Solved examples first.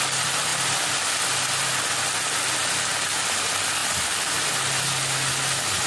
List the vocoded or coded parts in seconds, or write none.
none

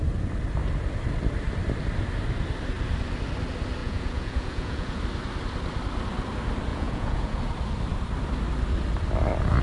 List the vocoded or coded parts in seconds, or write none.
3.8-5.0 (vocoder, Vocos); 6.7-7.4

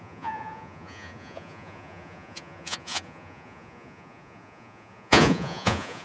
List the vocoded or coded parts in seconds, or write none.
0.0-6.0 (vocoder, Vocos)

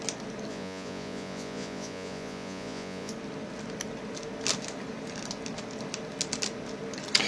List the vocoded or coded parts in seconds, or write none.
0.5-3.1 (vocoder, Vocos)

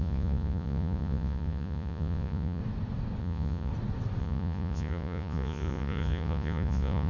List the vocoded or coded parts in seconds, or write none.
0.0-2.6 (vocoder, Vocos); 3.2-3.7; 4.2-7.1